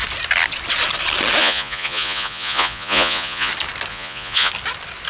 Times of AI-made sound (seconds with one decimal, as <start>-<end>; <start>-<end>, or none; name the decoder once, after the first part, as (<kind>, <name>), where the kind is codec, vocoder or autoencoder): 1.4-3.5 (vocoder, Vocos); 3.9-4.5